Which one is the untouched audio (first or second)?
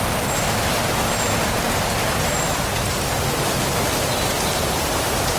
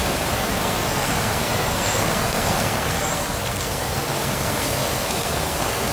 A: first